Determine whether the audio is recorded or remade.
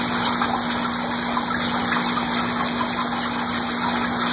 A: recorded